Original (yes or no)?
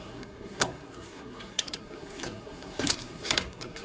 no